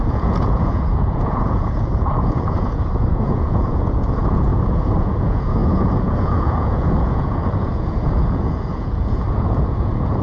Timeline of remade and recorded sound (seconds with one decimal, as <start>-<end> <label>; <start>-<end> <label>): 0.0-10.2 remade